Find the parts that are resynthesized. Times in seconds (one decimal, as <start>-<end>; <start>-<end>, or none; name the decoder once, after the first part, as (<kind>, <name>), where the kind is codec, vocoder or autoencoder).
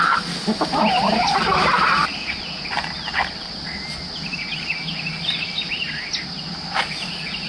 none